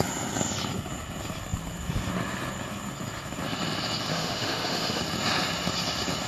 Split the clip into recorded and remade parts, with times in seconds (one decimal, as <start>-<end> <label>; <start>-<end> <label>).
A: 0.0-4.1 recorded; 4.1-5.0 remade; 5.0-6.3 recorded